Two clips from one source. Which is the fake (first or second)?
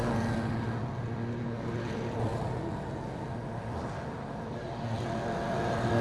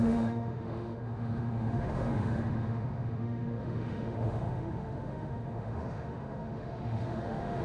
second